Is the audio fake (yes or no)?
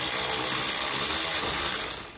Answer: no